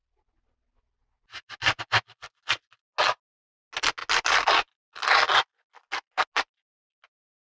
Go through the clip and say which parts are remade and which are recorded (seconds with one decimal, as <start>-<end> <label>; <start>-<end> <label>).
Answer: 0.0-7.4 recorded